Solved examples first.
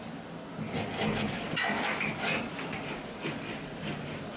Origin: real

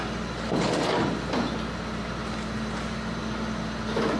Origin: real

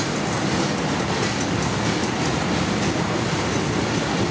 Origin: real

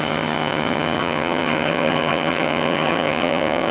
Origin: fake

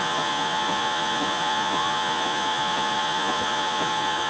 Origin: fake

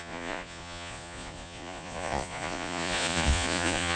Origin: fake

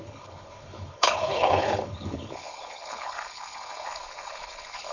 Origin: fake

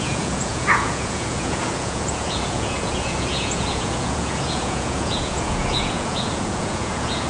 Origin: fake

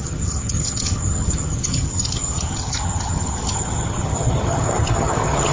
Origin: fake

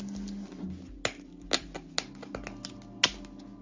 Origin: real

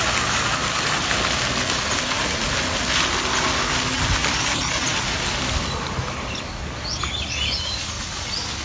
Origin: real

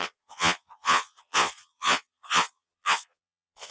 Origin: fake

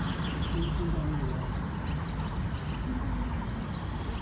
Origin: real